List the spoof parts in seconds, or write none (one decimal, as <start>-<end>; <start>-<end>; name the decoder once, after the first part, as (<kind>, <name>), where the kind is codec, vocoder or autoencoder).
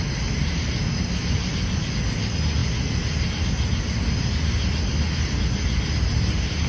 none